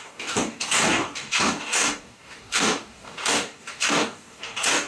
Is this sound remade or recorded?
remade